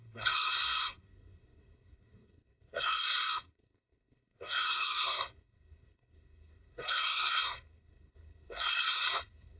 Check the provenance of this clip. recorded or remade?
remade